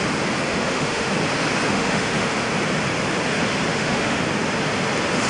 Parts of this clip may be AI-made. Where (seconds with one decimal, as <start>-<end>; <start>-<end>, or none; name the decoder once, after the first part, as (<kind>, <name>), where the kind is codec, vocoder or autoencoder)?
0.5-1.1 (autoencoder, DAC-VAE); 1.7-2.5; 3.7-4.2